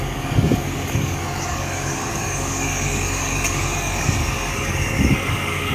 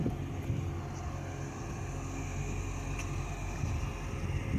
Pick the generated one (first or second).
first